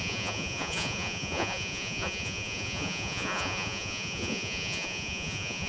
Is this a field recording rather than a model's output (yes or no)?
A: no